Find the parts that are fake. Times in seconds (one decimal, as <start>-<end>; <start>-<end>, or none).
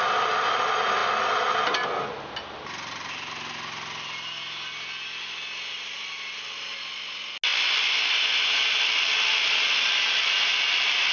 none